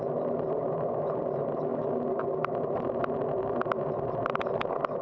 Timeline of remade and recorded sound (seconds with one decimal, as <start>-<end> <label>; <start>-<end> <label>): 0.0-5.0 recorded